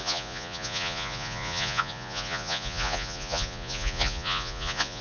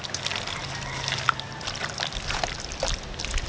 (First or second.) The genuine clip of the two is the second